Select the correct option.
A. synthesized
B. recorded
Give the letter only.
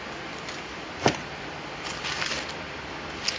B